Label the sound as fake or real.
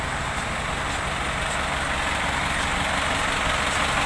real